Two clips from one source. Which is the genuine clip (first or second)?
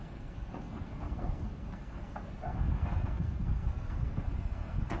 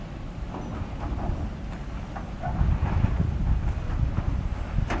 second